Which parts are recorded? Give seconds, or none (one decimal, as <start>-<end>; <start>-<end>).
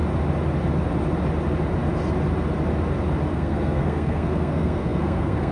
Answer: 0.0-3.3